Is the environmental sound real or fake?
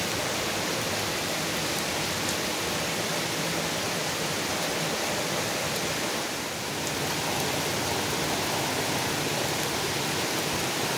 real